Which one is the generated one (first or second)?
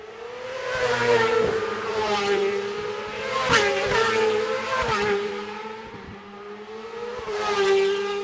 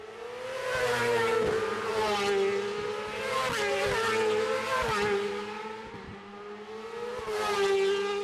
first